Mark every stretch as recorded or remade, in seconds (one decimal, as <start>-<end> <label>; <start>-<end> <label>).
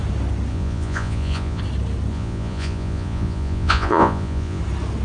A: 0.0-0.5 recorded; 0.5-1.6 remade; 1.6-2.1 recorded; 2.1-4.6 remade; 4.6-5.0 recorded